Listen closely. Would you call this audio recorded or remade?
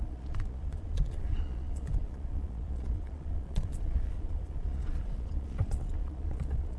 remade